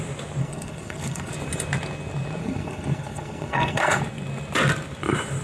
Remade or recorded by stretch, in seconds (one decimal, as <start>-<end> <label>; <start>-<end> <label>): 0.0-0.4 recorded; 0.4-1.3 remade; 1.3-2.4 recorded; 2.4-4.0 remade; 4.0-5.4 recorded